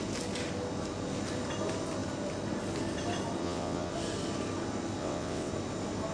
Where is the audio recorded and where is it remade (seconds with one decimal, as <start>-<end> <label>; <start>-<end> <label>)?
0.0-3.4 recorded; 3.4-3.9 remade; 3.9-5.0 recorded; 5.0-5.5 remade; 5.5-6.1 recorded